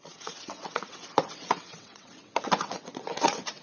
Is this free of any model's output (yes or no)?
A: no